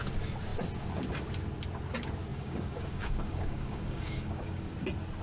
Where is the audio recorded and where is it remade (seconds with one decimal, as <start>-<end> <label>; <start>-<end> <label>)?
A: 0.0-2.3 recorded; 2.3-4.7 remade; 4.7-5.2 recorded